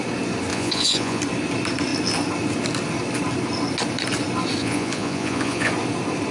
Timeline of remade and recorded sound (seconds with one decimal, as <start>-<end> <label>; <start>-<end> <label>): 0.0-0.5 recorded; 0.5-1.2 remade; 1.2-4.6 recorded; 4.6-5.7 remade; 5.7-6.3 recorded